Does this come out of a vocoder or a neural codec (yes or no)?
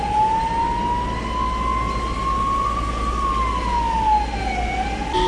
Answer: no